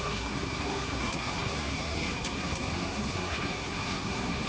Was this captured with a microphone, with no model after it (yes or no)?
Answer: no